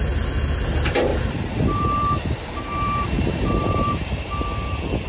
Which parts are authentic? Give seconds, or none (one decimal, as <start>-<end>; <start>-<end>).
0.0-1.1; 4.2-5.1

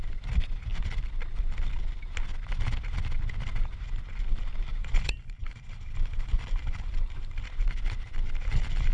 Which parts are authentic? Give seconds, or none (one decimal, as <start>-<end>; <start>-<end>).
0.0-4.8; 7.4-8.9

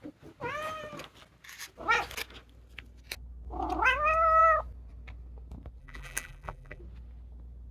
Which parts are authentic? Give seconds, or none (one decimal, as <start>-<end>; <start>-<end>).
0.0-5.8; 6.8-7.7

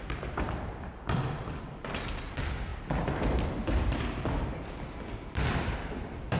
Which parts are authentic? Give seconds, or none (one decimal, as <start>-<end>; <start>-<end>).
none

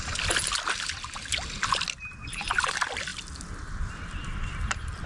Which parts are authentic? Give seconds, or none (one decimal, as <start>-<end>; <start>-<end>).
0.0-5.1